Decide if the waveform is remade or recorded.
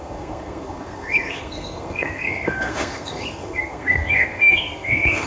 remade